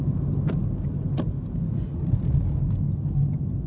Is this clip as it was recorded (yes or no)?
yes